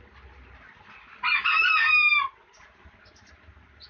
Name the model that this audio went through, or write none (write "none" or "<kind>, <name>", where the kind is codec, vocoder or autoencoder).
none